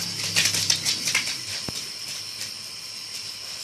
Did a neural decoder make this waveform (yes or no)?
yes